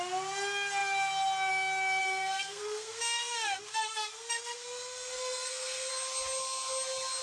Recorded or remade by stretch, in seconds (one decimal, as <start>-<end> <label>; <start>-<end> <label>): 0.0-2.0 recorded; 2.0-5.9 remade; 5.9-7.2 recorded